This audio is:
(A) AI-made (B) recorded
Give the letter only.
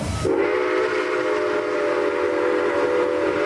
B